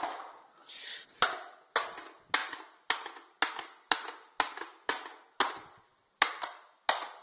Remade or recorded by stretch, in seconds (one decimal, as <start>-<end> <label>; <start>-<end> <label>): 0.0-7.2 recorded

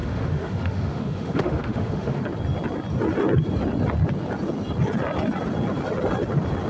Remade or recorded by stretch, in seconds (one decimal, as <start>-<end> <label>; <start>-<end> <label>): 0.0-2.2 remade; 2.2-6.7 recorded

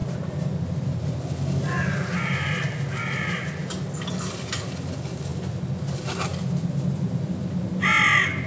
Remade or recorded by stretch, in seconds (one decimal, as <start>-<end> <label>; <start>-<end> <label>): 0.0-1.0 remade; 1.0-8.5 recorded

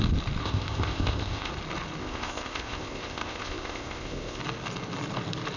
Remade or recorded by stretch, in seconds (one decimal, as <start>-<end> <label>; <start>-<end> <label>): 0.0-0.4 recorded; 0.4-1.5 remade; 1.5-2.0 recorded; 2.0-4.4 remade; 4.4-5.6 recorded

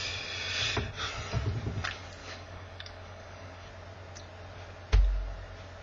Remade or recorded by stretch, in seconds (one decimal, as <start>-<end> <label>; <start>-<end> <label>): 0.0-2.2 recorded; 2.2-3.7 remade; 3.7-5.8 recorded

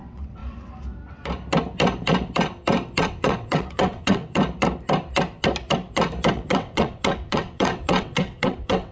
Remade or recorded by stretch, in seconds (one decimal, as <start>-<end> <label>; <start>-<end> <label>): 0.0-0.4 remade; 0.4-3.0 recorded; 3.0-4.4 remade; 4.4-6.3 recorded; 6.3-8.9 remade